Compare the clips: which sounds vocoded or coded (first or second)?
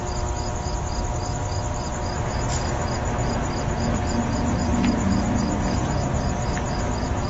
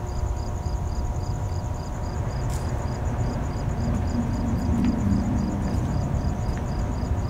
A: second